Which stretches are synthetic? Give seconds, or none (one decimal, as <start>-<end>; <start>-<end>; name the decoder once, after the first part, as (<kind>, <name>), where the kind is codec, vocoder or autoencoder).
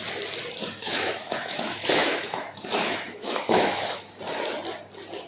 0.8-4.0 (autoencoder, DAC-VAE)